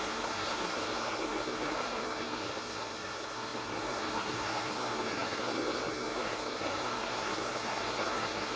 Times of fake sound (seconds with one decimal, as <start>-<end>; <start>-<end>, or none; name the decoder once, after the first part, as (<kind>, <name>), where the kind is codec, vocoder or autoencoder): 0.0-8.6 (codec, SNAC)